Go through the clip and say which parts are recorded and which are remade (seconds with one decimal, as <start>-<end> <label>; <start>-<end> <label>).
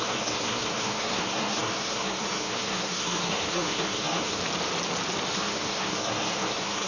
0.0-4.4 remade; 4.4-5.3 recorded; 5.3-6.9 remade